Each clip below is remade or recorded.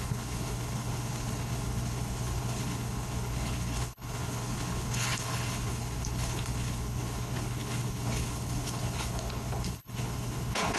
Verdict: remade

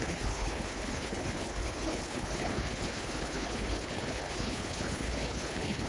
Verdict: remade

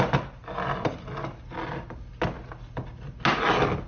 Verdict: recorded